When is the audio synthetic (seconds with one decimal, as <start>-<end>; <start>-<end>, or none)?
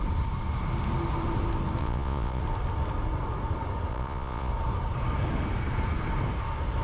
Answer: 1.8-2.4; 3.9-4.5